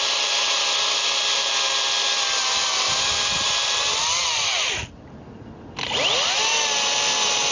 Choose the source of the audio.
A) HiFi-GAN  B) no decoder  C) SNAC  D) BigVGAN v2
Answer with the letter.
B